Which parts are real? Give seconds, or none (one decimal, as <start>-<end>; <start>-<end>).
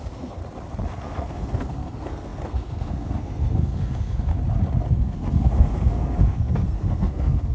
0.4-0.9; 4.3-4.9